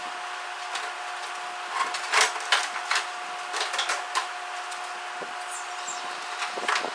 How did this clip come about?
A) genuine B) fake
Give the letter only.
A